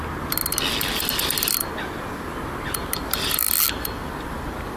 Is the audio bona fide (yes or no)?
yes